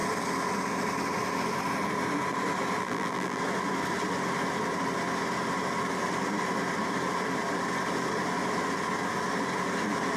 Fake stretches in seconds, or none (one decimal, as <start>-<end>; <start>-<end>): 2.8-3.4